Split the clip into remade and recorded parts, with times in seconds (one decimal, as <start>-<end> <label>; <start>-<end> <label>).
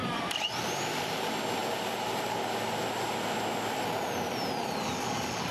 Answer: 0.0-1.1 remade; 1.1-5.5 recorded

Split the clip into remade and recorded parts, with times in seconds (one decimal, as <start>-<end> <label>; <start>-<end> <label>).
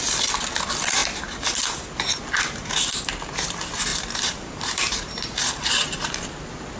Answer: 0.0-3.9 recorded; 3.9-6.8 remade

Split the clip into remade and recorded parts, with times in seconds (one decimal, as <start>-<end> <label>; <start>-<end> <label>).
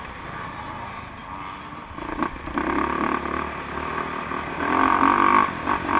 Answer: 0.0-6.0 recorded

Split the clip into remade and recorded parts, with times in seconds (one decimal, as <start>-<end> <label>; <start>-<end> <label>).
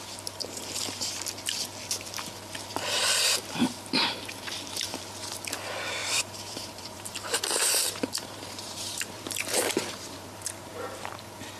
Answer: 0.0-0.4 recorded; 0.4-1.2 remade; 1.2-3.0 recorded; 3.0-4.3 remade; 4.3-6.0 recorded; 6.0-11.1 remade; 11.1-11.6 recorded